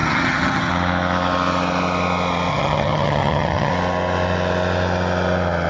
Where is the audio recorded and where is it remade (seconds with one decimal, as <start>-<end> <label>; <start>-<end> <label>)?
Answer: 0.0-0.7 remade; 0.7-2.5 recorded; 2.5-3.7 remade; 3.7-5.7 recorded